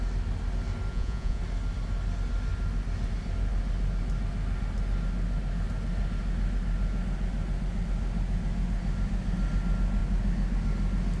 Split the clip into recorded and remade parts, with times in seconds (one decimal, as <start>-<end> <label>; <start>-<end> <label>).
0.0-0.9 recorded; 0.9-1.4 remade; 1.4-11.2 recorded